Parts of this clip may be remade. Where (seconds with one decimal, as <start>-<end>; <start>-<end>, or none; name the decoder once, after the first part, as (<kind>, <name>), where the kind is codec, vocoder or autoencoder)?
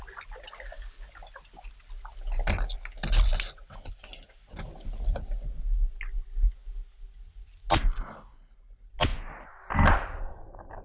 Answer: none